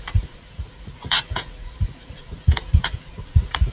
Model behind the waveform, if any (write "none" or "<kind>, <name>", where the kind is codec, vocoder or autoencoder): vocoder, Vocos